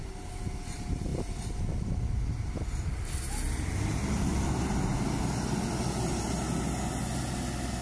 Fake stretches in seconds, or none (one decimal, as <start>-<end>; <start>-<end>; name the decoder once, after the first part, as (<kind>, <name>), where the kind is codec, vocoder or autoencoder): none